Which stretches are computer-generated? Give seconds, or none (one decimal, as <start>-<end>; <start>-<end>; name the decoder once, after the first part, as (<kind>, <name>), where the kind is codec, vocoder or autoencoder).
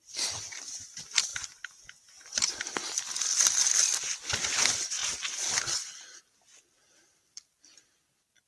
0.0-1.3 (vocoder, BigVGAN v2); 4.2-5.0; 6.2-8.5